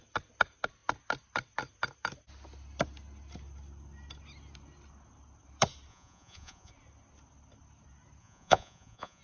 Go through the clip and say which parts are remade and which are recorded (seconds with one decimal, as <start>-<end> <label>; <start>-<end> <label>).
0.0-5.9 recorded; 5.9-6.7 remade; 6.7-8.2 recorded; 8.2-9.2 remade